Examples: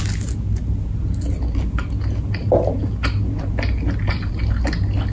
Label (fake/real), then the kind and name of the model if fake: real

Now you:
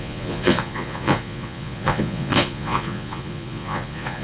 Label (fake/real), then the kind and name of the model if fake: fake, vocoder, Vocos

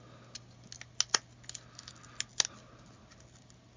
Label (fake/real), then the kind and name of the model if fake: real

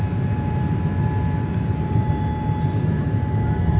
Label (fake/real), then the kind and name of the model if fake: real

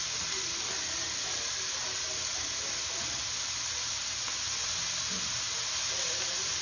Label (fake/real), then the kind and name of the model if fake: real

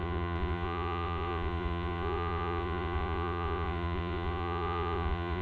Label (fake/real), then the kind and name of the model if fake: fake, vocoder, Vocos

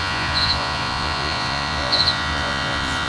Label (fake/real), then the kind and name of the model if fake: fake, vocoder, Vocos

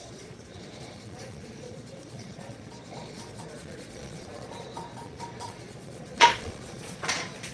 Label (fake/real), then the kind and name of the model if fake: fake, vocoder, Vocos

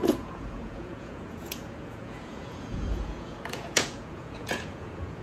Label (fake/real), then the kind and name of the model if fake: fake, vocoder, Vocos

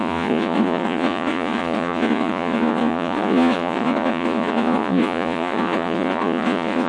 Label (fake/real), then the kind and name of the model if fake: fake, vocoder, Vocos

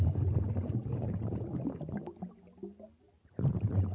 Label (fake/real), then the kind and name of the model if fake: real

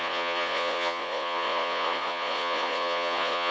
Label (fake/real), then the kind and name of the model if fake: fake, vocoder, Vocos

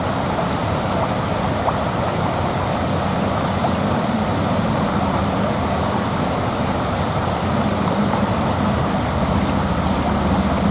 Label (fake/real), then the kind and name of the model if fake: real